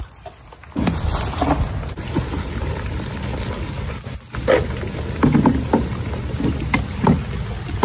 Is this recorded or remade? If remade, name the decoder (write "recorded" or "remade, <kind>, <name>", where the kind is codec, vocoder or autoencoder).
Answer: recorded